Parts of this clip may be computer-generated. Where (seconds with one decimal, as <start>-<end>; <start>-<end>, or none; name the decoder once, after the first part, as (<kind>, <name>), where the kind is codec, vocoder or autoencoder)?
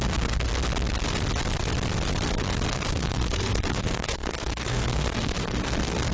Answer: 0.0-0.5 (codec, SNAC); 2.7-6.1